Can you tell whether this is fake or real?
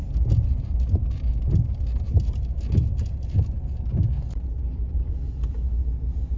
real